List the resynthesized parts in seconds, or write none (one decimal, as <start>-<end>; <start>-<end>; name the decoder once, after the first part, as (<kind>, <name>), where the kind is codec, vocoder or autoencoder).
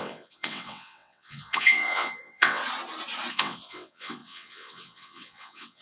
0.0-2.6 (vocoder, WaveNeXt); 3.3-5.8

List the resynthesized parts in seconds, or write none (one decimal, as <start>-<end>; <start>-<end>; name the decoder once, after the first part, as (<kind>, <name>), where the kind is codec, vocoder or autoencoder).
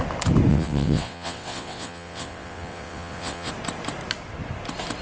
0.5-3.5 (vocoder, WaveNeXt)